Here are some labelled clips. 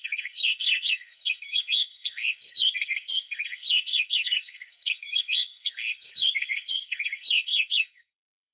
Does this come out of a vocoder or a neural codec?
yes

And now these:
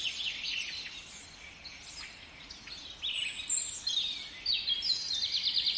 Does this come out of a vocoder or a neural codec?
no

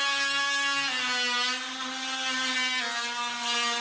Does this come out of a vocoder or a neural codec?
no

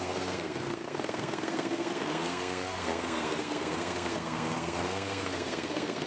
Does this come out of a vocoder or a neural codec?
yes